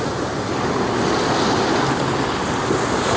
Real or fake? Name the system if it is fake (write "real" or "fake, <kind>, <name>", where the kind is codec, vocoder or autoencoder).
real